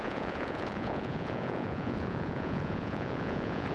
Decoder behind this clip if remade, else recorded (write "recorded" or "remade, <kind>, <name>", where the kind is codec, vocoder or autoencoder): remade, vocoder, Vocos